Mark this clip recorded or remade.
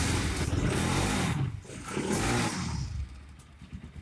recorded